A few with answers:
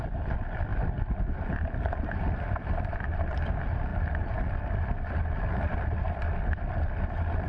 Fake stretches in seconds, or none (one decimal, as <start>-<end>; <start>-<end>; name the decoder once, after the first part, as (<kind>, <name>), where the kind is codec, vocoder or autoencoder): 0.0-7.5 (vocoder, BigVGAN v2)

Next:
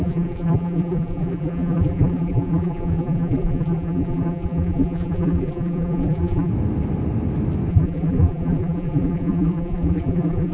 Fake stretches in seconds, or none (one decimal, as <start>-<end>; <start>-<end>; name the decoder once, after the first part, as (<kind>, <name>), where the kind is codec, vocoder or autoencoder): 0.0-6.5 (vocoder, BigVGAN v2); 7.7-10.5

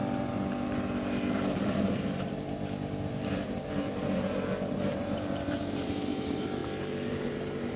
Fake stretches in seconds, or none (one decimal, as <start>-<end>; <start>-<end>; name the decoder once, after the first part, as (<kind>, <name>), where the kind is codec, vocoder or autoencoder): 1.3-7.8 (vocoder, BigVGAN v2)